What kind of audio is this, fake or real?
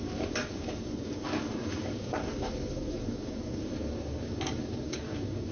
fake